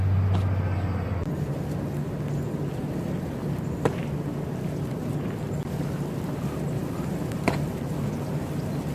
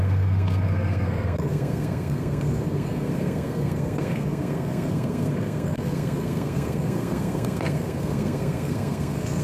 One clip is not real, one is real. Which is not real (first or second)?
second